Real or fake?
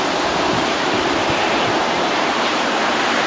fake